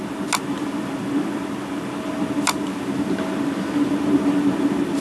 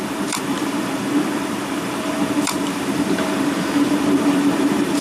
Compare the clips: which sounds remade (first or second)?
second